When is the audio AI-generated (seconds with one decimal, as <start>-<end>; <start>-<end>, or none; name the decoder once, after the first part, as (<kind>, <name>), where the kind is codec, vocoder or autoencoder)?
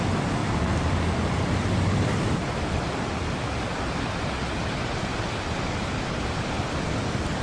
0.4-4.3 (vocoder, BigVGAN v2); 5.1-7.4